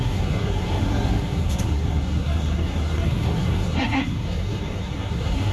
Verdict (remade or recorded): remade